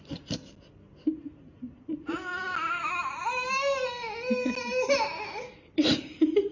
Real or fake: real